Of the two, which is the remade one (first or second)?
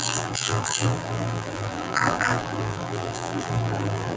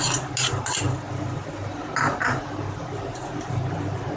first